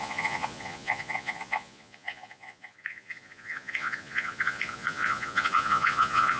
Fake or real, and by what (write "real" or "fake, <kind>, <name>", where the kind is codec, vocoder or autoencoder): fake, vocoder, Vocos